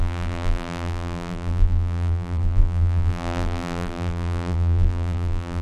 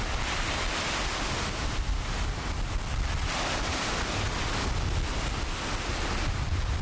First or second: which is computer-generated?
first